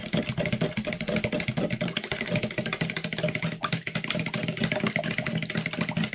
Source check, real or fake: real